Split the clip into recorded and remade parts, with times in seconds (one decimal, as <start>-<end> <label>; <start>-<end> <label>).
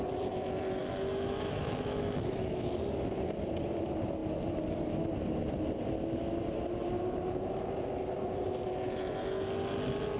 0.0-0.8 recorded; 0.8-2.7 remade; 2.7-10.2 recorded